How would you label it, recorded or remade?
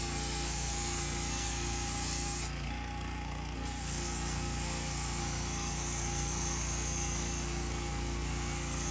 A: remade